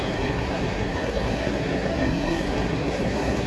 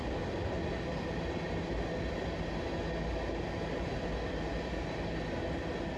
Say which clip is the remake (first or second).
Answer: first